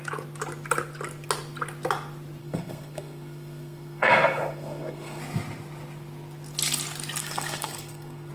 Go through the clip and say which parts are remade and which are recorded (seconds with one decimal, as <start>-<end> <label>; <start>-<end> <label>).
0.0-2.4 recorded; 2.4-5.2 remade; 5.2-7.2 recorded; 7.2-8.3 remade

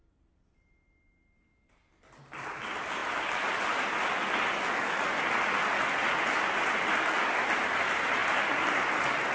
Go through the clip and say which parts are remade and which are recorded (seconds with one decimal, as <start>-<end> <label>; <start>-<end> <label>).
0.0-9.3 recorded